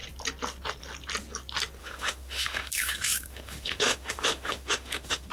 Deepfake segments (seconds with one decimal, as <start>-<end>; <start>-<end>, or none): 1.8-5.3